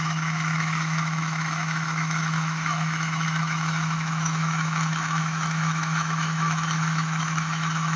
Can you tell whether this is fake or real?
fake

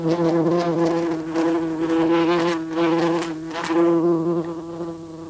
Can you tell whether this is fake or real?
real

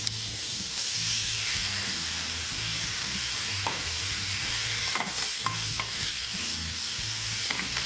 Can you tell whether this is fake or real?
fake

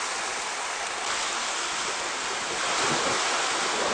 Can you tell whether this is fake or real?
real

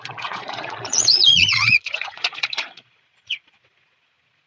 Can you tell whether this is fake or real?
fake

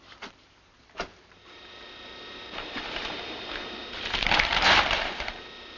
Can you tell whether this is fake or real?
fake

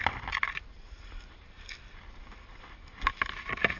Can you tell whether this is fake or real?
real